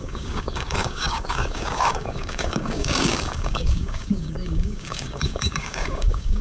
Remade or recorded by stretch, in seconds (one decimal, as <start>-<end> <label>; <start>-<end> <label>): 0.0-6.4 remade

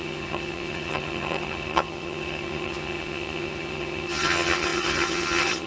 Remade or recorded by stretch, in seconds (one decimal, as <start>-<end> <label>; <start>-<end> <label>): 0.0-5.7 remade

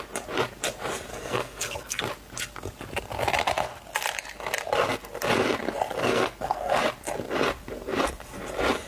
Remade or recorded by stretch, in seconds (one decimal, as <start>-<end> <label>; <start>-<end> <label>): 0.0-1.1 recorded; 1.1-2.0 remade; 2.0-6.0 recorded; 6.0-6.8 remade; 6.8-8.9 recorded

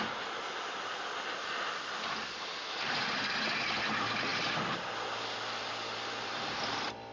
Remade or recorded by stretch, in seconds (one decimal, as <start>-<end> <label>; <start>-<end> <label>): 0.0-7.1 recorded